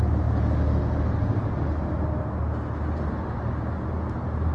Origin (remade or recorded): recorded